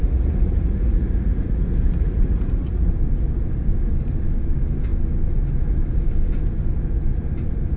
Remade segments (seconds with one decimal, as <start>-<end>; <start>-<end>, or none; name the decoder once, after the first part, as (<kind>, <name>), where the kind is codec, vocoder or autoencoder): 0.0-2.9 (vocoder, Vocos)